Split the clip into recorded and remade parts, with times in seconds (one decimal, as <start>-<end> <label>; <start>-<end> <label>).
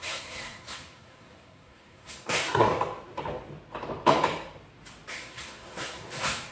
0.0-2.7 remade; 2.7-5.1 recorded; 5.1-6.5 remade